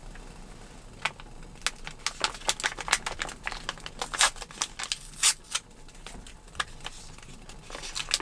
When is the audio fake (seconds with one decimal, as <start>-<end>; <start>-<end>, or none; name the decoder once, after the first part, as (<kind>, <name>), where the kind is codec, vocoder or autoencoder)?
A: none